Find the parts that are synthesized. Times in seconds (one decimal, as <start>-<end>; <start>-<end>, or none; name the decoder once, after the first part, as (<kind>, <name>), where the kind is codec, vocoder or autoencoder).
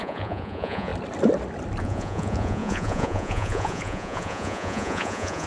0.0-0.9 (vocoder, Vocos); 1.8-5.5